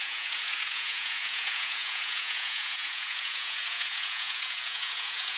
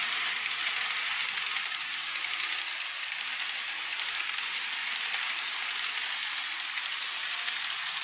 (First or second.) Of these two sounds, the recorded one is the second